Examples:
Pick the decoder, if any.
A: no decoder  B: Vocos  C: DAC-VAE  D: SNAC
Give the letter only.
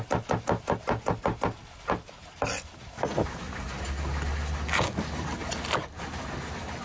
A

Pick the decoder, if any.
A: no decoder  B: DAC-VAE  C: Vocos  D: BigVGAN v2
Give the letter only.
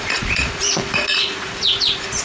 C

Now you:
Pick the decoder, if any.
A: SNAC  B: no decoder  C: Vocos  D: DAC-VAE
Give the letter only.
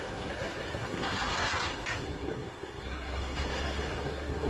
A